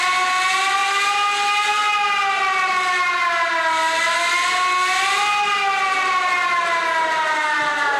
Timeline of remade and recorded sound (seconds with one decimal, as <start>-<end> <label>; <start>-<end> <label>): 0.0-8.0 recorded